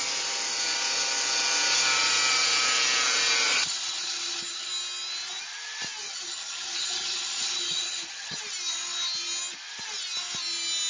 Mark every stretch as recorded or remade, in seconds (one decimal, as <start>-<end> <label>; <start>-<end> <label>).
0.0-3.5 recorded; 3.5-4.7 remade; 4.7-6.0 recorded; 6.0-8.4 remade; 8.4-10.9 recorded